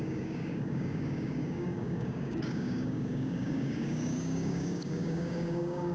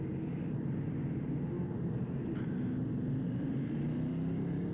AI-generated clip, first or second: first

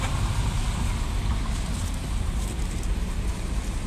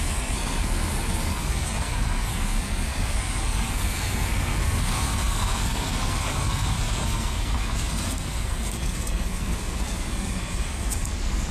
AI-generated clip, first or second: second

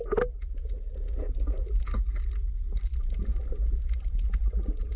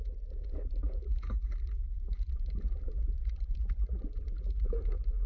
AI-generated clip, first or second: second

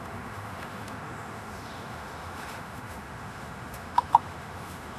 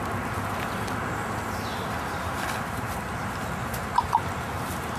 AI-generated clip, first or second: first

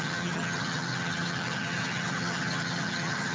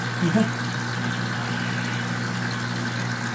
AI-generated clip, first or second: first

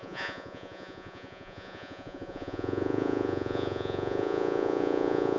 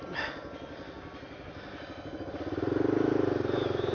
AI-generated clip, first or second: first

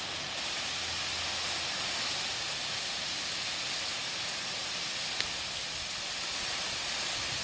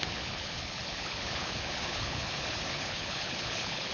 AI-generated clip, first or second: second